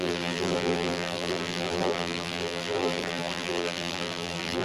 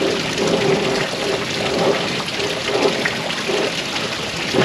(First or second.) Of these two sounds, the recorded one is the second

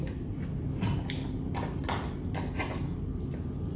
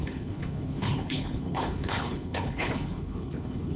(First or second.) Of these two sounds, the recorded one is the first